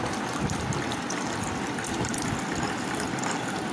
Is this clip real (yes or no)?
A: yes